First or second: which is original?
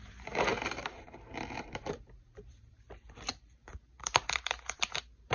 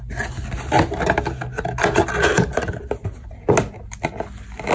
second